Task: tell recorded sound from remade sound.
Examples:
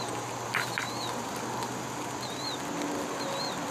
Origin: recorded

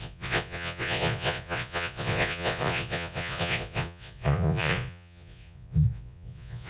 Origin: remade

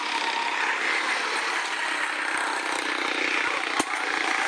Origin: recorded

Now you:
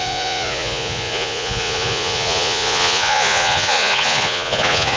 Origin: remade